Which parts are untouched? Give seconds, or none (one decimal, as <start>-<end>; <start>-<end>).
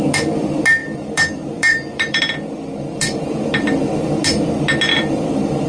0.0-0.8; 2.2-2.9; 4.2-4.9